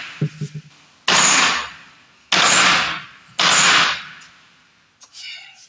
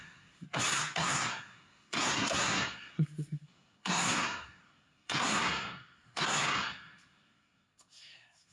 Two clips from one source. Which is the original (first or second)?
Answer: first